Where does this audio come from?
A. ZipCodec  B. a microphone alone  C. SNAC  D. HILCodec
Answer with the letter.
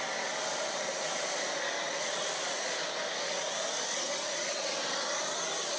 B